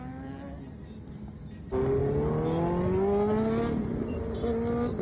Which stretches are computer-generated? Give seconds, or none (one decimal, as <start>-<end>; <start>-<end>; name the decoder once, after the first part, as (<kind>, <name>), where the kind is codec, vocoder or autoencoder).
none